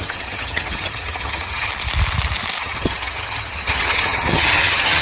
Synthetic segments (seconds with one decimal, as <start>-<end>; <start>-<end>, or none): 0.0-1.7; 2.6-5.0